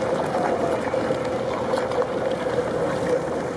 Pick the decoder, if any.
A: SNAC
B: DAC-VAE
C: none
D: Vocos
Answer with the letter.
C